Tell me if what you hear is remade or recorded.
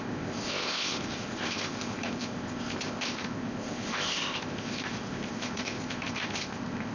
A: remade